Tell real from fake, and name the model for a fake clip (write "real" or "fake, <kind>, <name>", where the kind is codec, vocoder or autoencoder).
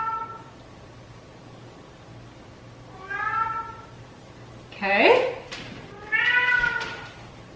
real